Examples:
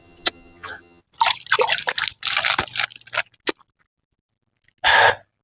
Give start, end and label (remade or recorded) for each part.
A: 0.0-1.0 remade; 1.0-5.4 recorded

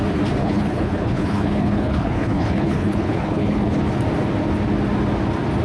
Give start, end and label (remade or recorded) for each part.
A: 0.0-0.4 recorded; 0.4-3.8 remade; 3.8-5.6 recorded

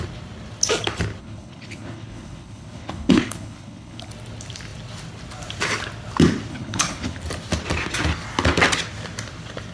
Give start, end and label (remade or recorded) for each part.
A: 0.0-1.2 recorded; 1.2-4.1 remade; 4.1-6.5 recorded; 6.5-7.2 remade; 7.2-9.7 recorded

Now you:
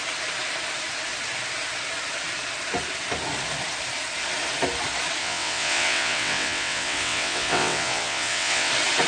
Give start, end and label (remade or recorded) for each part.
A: 0.0-5.2 recorded; 5.2-8.7 remade; 8.7-9.1 recorded

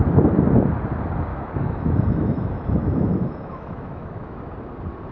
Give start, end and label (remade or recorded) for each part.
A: 0.0-1.3 recorded; 1.3-4.4 remade; 4.4-5.1 recorded

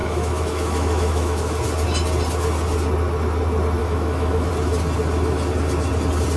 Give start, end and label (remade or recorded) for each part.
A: 0.0-1.5 remade; 1.5-3.8 recorded; 3.8-4.5 remade; 4.5-6.4 recorded

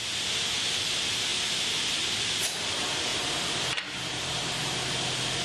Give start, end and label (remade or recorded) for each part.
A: 0.0-5.4 recorded